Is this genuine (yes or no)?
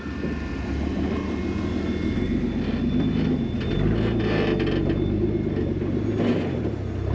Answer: yes